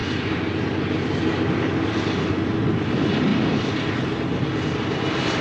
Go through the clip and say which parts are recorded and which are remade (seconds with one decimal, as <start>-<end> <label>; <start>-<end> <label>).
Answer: 0.0-5.4 recorded